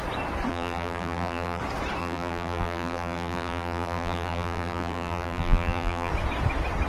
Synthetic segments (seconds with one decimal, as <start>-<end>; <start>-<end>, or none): 0.5-1.6; 2.0-6.1